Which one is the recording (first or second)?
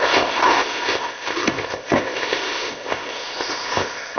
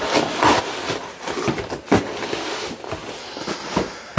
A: second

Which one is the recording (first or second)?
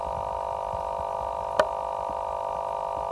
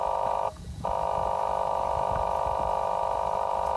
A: first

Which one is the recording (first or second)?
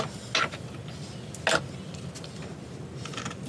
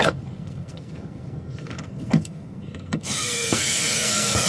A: first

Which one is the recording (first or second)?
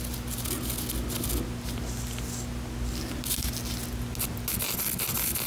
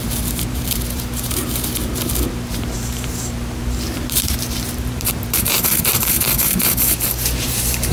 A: first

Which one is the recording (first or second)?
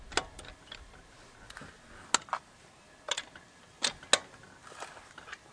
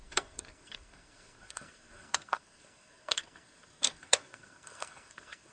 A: first